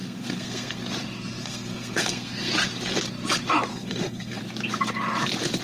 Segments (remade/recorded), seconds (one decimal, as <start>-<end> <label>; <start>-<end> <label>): 0.0-0.8 remade; 0.8-1.4 recorded; 1.4-2.5 remade; 2.5-3.7 recorded; 3.7-4.4 remade; 4.4-5.6 recorded